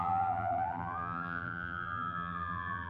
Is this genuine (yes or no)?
no